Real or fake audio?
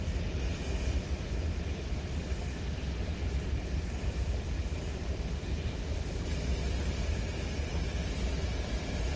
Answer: real